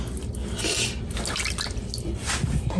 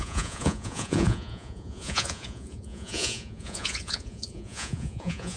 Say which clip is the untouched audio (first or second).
first